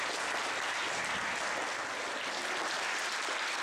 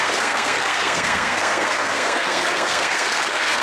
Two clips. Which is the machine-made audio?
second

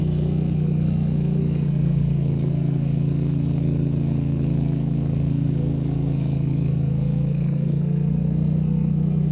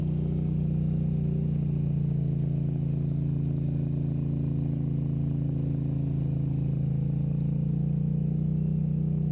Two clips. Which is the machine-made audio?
first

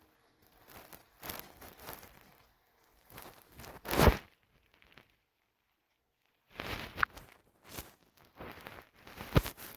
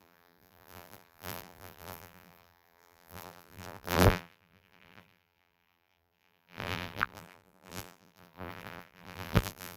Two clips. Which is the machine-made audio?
second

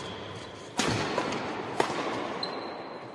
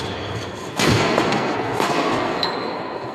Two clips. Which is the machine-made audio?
second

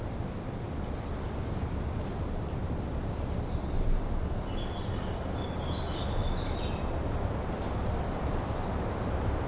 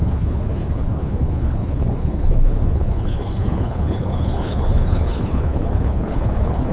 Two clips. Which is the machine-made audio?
second